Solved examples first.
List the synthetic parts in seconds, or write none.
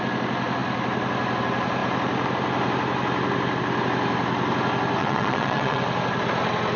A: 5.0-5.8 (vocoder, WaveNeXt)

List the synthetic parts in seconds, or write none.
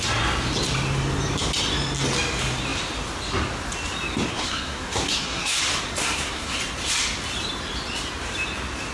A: 4.3-5.6 (codec, SNAC); 6.0-6.6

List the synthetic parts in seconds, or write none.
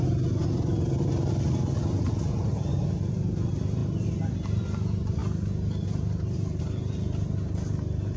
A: none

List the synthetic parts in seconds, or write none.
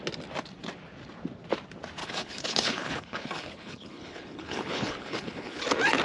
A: 2.0-5.6 (codec, HILCodec)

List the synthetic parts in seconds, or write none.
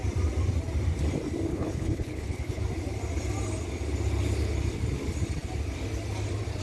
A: 1.5-2.6 (codec, HILCodec)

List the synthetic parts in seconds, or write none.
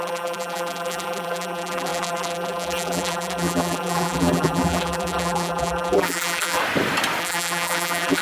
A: 0.0-6.6 (vocoder, BigVGAN v2); 7.2-8.2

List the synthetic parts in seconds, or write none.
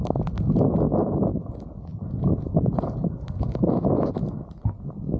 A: none